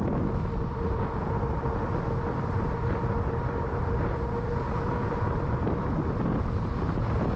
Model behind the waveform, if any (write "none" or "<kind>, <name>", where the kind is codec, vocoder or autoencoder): none